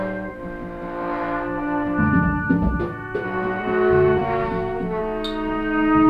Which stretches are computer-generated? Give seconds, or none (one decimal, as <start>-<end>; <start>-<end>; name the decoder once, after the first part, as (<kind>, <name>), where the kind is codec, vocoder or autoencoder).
4.2-5.0 (autoencoder, DAC-VAE)